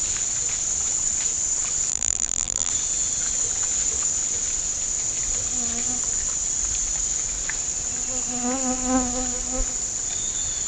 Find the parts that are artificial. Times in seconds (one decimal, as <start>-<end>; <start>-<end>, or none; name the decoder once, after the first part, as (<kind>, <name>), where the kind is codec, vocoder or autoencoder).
1.9-2.7 (vocoder, BigVGAN v2)